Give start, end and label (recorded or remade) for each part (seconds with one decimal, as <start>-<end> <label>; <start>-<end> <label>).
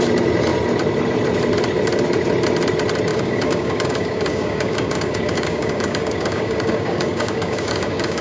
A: 0.0-3.1 recorded; 3.1-8.2 remade